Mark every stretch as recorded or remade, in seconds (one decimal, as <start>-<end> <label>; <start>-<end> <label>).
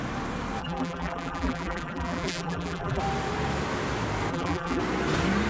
0.0-0.6 recorded; 0.6-3.0 remade; 3.0-4.3 recorded; 4.3-4.8 remade; 4.8-5.5 recorded